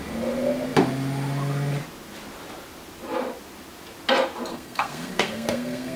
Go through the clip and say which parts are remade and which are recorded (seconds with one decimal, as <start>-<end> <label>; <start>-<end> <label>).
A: 0.0-4.5 recorded; 4.5-6.0 remade